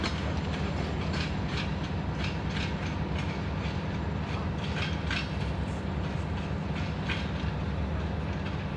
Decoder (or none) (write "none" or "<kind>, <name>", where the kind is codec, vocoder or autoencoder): none